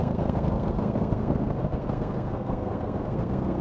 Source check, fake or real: fake